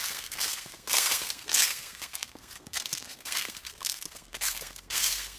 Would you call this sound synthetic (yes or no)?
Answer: yes